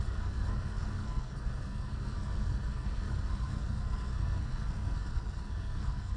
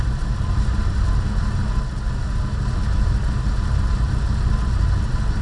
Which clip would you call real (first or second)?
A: second